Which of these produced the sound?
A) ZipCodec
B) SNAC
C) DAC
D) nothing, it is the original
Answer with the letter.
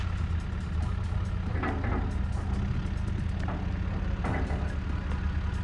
D